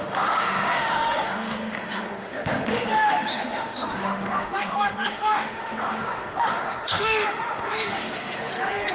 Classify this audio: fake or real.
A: fake